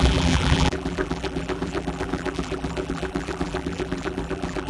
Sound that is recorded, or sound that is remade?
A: remade